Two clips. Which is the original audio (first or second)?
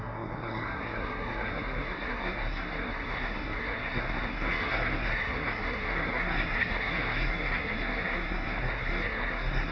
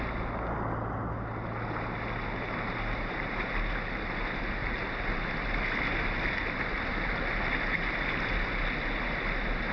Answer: second